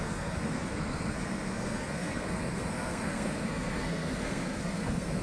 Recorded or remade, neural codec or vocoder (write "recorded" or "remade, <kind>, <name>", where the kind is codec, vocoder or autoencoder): remade, codec, SNAC